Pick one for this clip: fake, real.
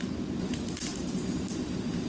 real